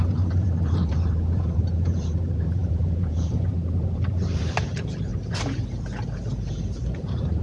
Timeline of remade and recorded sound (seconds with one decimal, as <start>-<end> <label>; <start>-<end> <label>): 0.0-5.1 remade; 5.1-6.5 recorded; 6.5-7.4 remade